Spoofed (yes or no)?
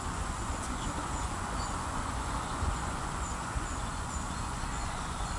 yes